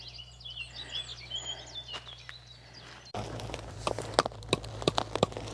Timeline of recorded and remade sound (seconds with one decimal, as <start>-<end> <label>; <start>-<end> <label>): 0.0-5.5 recorded